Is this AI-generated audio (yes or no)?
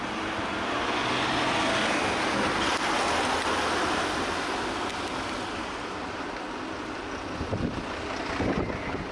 no